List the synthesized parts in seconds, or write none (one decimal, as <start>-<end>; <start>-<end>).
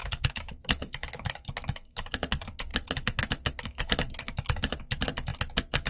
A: 0.0-2.1; 2.7-4.8